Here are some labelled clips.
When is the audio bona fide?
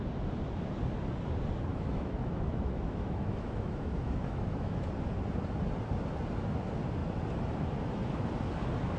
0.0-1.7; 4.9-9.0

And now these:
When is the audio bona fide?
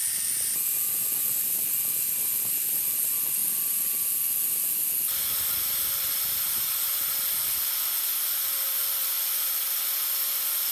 0.0-10.7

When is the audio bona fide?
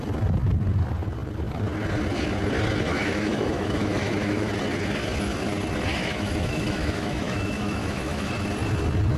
0.0-2.9; 4.5-5.9; 8.3-9.2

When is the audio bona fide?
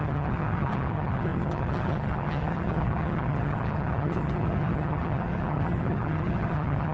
none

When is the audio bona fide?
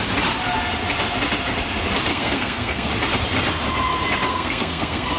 0.0-2.1; 2.9-4.3